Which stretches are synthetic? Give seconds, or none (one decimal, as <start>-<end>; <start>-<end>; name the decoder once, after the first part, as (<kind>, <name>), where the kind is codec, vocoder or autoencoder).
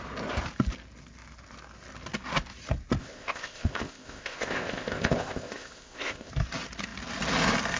3.0-6.3 (codec, ZipCodec)